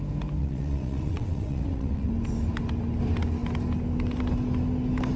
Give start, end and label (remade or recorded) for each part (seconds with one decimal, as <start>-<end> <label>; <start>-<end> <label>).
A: 0.0-0.4 recorded; 0.4-2.1 remade; 2.1-5.2 recorded